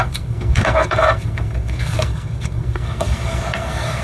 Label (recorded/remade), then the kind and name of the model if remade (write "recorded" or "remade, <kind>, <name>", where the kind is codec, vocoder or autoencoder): remade, codec, SNAC